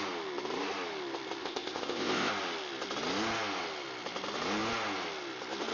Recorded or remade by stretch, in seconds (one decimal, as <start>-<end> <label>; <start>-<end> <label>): 0.0-1.4 recorded; 1.4-2.3 remade; 2.3-5.7 recorded